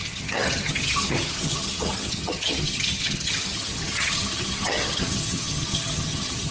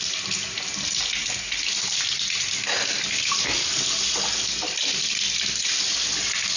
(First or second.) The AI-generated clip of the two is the first